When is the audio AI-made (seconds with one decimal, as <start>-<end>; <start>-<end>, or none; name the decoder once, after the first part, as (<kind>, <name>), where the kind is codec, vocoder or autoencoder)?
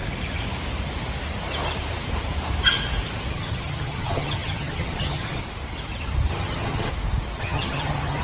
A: 3.3-5.4 (vocoder, HiFi-GAN); 6.3-6.9; 7.4-8.2